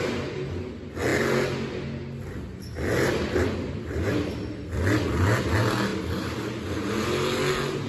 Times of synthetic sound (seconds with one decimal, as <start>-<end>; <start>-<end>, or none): none